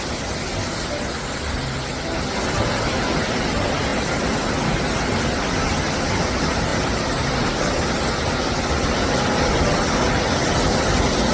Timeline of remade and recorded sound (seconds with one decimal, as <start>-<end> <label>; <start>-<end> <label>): 0.0-11.3 recorded